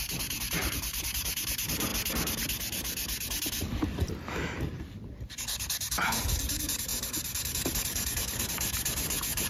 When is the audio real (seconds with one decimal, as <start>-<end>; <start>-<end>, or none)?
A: 1.9-6.2